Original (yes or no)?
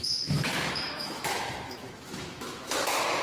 no